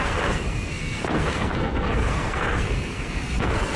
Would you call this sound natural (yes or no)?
no